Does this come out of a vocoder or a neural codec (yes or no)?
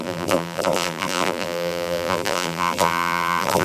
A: yes